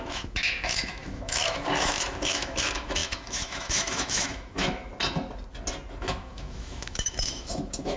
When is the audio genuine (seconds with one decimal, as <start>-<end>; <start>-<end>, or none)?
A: 4.9-6.0